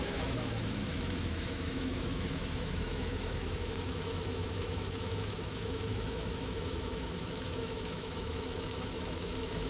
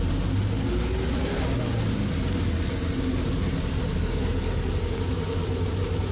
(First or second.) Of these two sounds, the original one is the second